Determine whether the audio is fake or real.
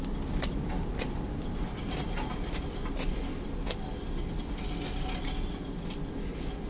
real